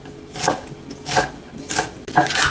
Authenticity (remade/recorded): recorded